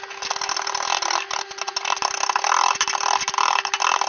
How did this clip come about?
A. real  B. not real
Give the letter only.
A